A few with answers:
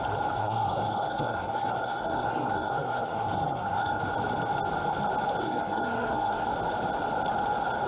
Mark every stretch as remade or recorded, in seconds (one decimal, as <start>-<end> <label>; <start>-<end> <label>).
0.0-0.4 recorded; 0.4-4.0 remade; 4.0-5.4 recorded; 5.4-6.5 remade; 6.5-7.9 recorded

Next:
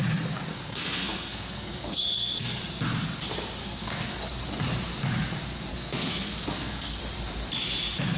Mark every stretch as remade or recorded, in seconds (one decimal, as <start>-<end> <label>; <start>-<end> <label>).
0.0-0.5 recorded; 0.5-2.6 remade; 2.6-3.6 recorded; 3.6-4.3 remade; 4.3-5.7 recorded; 5.7-7.0 remade; 7.0-8.2 recorded

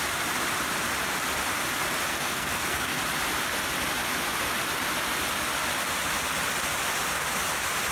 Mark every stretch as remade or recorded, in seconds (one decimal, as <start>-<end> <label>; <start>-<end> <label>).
0.0-2.1 recorded; 2.1-3.0 remade; 3.0-7.9 recorded

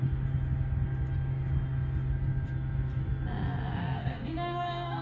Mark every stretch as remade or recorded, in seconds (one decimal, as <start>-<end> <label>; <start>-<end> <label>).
0.0-3.8 recorded; 3.8-5.0 remade

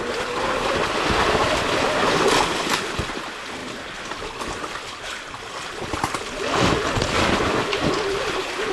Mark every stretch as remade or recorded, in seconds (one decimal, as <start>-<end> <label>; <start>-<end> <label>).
0.0-8.7 recorded